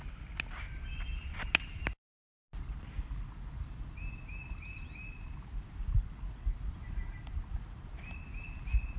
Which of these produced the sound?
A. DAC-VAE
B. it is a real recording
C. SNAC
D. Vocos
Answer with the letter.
B